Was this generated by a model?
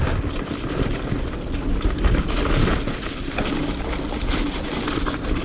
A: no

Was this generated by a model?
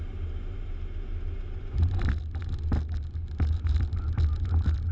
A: no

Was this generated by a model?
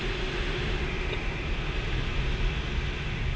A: no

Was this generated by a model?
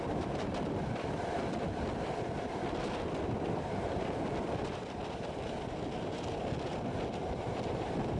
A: no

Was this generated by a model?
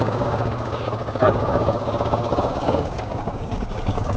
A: yes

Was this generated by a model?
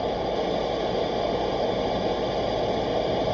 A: no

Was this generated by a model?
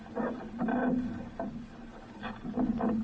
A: no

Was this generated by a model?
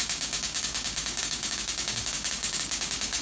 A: yes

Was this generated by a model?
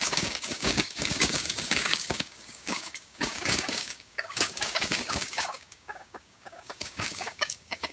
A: yes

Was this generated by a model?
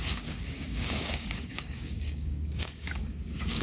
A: yes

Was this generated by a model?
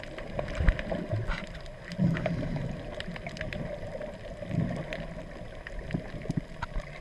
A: no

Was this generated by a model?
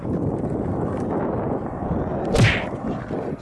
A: no